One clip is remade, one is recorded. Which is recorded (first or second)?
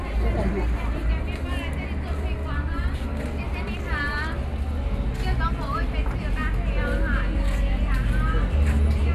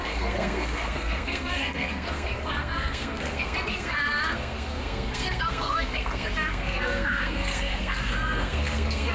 first